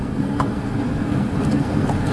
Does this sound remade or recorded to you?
remade